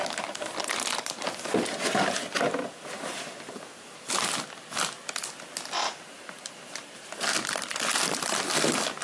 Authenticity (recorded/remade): recorded